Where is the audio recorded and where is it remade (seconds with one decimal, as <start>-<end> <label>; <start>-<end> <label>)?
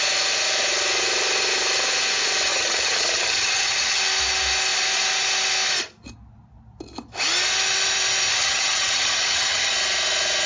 0.0-2.5 recorded; 2.5-4.0 remade; 4.0-8.3 recorded; 8.3-9.7 remade; 9.7-10.5 recorded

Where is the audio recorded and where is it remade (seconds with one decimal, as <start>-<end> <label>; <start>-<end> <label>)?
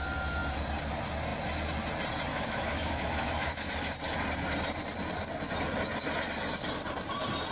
0.0-2.3 recorded; 2.3-3.7 remade; 3.7-7.5 recorded